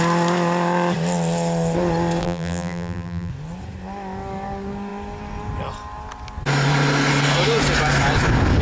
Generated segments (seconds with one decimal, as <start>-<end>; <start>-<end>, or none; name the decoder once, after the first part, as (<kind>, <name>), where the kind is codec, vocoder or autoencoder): 2.2-3.3 (vocoder, BigVGAN v2)